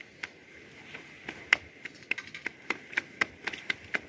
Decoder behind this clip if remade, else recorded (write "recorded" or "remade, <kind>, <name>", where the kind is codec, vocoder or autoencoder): recorded